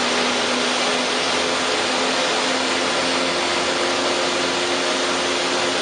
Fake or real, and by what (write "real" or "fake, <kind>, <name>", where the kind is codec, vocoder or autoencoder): real